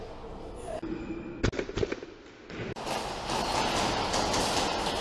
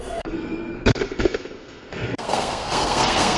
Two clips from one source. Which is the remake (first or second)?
second